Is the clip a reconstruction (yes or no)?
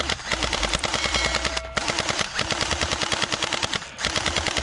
yes